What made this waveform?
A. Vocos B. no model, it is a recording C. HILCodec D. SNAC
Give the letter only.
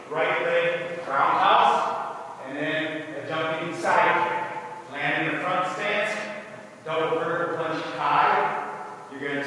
B